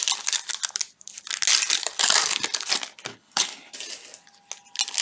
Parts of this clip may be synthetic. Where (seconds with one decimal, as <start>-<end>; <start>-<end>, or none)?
3.1-3.7